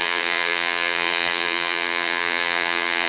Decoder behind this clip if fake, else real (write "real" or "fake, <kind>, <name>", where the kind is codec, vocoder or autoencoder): fake, vocoder, BigVGAN v2